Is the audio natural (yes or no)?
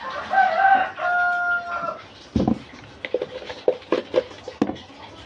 yes